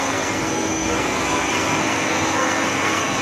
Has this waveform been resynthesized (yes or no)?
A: yes